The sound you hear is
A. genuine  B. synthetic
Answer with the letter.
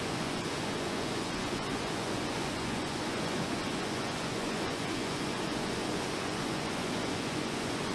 B